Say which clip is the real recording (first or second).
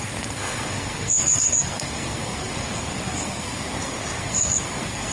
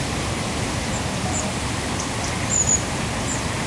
second